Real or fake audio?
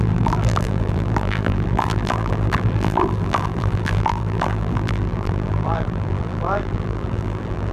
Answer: fake